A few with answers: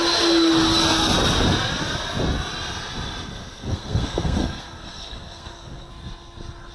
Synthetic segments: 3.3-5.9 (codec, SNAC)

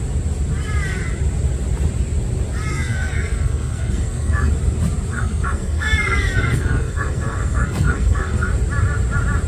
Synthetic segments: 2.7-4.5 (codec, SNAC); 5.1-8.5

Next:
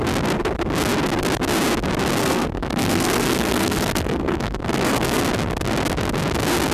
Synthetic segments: 2.2-5.2 (codec, SNAC)